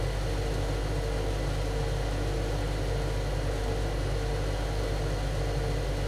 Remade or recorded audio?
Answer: recorded